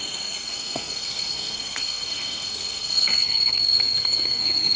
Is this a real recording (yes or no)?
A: no